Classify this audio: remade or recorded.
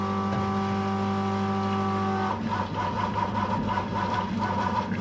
recorded